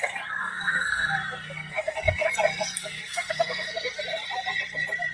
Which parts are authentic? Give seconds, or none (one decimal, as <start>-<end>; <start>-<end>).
0.0-0.4; 2.3-2.8; 4.0-5.1